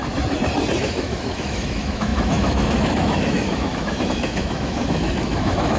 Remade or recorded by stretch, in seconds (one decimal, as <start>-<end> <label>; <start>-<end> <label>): 0.0-0.8 recorded; 0.8-5.8 remade

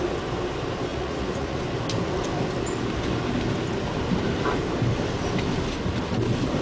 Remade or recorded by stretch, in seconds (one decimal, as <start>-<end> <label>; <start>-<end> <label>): 0.0-0.9 recorded; 0.9-1.6 remade; 1.6-6.6 recorded

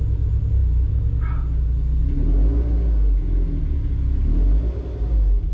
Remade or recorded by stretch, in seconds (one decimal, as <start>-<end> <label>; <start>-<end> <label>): 0.0-5.5 recorded

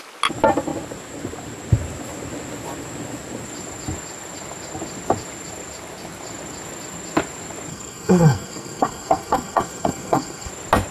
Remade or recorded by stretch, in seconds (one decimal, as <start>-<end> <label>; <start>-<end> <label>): 0.0-7.7 recorded; 7.7-10.5 remade; 10.5-10.9 recorded

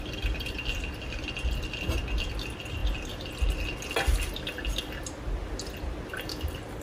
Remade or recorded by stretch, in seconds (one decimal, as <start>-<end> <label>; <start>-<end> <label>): 0.0-6.8 recorded